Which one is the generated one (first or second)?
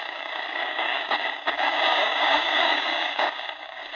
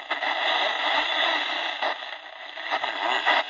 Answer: first